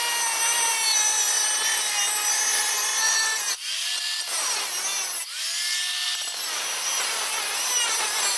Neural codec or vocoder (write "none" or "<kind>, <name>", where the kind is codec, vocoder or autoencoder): none